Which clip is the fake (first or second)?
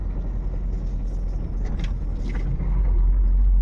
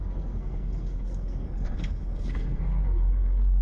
second